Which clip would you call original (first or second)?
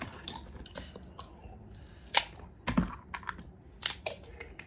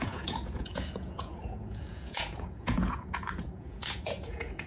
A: first